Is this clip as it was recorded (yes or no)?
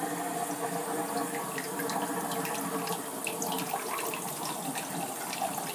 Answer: yes